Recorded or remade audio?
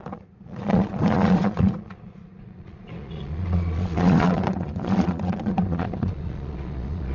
remade